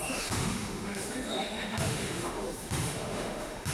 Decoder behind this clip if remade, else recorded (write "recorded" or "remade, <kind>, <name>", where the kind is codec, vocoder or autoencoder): remade, autoencoder, DAC-VAE